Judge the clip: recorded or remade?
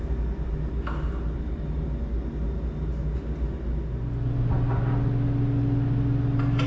recorded